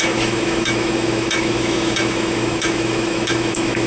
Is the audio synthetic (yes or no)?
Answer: yes